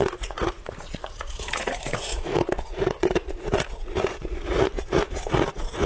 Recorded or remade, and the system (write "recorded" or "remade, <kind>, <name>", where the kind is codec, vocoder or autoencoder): remade, vocoder, Vocos